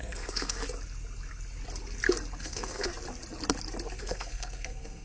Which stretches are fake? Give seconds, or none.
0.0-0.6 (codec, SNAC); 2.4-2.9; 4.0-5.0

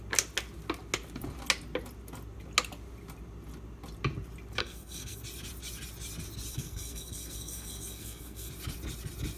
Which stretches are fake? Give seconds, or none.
4.6-5.2 (codec, SNAC); 6.5-8.5

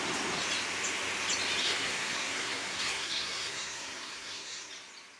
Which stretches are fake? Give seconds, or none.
1.6-4.7 (codec, SNAC)

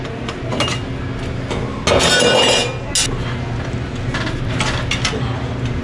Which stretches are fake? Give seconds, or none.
none

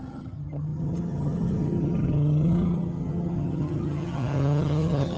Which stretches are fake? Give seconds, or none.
0.0-5.2 (vocoder, HiFi-GAN)

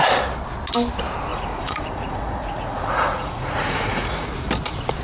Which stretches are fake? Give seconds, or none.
1.3-4.3 (vocoder, Vocos)

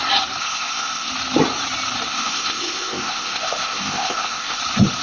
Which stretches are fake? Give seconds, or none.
0.4-1.1 (codec, ZipCodec); 2.1-4.6